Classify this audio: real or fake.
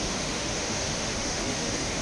fake